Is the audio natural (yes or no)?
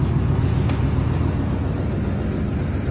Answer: yes